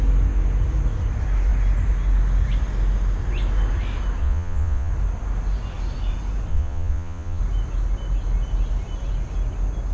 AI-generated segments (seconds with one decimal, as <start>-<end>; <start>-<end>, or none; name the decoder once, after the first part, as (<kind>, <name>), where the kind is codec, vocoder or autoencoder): 4.2-4.9 (vocoder, Vocos); 6.5-7.4